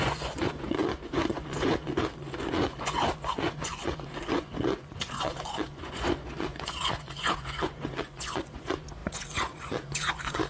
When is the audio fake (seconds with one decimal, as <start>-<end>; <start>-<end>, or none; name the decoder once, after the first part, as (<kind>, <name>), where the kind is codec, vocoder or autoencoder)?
0.0-10.5 (vocoder, Vocos)